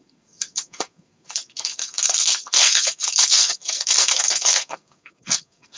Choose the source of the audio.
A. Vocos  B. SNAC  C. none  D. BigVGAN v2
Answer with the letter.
B